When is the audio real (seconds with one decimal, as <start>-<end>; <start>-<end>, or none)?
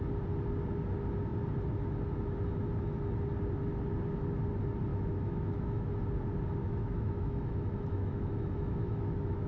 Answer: 0.0-4.9; 5.9-6.6